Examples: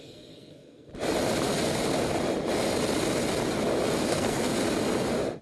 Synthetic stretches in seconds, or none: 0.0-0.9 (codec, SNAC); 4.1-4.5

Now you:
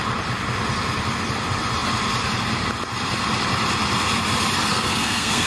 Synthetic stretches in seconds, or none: 4.7-5.5 (codec, SNAC)

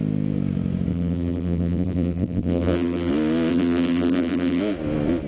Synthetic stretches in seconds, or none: 0.9-3.1 (vocoder, BigVGAN v2); 3.5-4.6